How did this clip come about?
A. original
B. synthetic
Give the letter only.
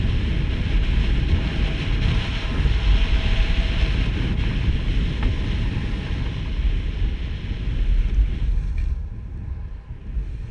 A